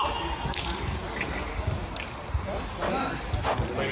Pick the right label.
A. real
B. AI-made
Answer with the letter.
A